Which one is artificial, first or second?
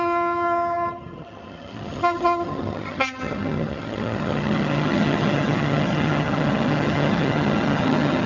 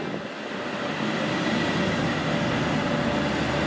first